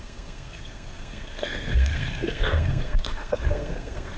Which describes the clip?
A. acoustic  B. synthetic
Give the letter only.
B